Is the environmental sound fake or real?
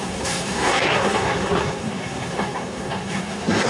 fake